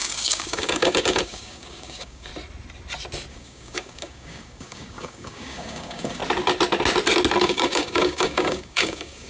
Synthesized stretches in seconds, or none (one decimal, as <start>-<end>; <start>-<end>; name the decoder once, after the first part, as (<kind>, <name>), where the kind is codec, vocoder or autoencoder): 0.0-2.3 (codec, DAC); 3.3-6.2; 7.4-9.3